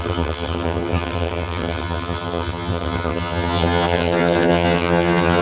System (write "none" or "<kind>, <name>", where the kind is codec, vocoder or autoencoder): vocoder, HiFi-GAN